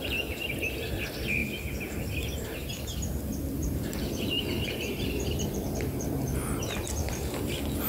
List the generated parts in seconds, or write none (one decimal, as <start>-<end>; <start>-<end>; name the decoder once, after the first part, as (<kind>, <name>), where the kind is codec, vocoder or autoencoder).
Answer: 3.6-7.5 (vocoder, BigVGAN v2)